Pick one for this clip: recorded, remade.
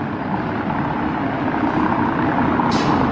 recorded